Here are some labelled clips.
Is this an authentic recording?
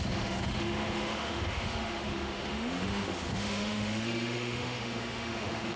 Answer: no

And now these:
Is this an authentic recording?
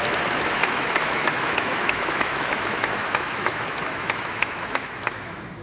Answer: no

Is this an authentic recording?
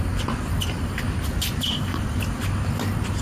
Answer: yes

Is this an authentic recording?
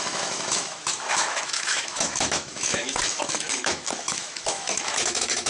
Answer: no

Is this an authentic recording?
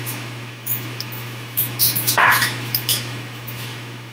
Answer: no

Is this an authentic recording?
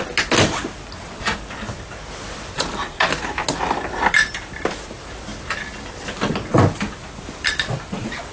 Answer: yes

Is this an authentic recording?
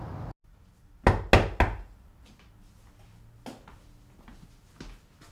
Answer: yes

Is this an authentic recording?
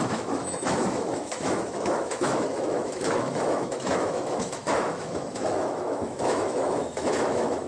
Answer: no